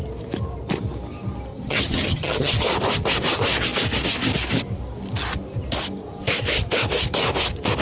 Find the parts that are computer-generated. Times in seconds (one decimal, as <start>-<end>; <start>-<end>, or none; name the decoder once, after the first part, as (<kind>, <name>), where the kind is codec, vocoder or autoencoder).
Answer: 1.5-2.5 (vocoder, HiFi-GAN)

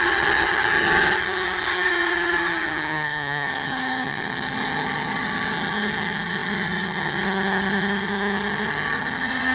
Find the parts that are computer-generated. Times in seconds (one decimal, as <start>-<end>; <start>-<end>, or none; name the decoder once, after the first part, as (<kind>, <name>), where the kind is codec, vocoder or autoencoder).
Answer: 0.0-9.5 (vocoder, HiFi-GAN)

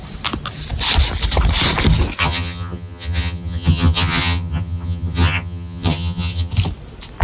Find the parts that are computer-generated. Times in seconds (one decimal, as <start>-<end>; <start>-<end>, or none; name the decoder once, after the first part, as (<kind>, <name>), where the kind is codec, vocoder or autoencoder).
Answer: 2.2-6.5 (vocoder, HiFi-GAN)